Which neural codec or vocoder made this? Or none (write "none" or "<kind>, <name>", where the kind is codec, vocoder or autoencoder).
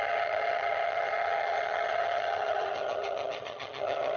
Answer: vocoder, HiFi-GAN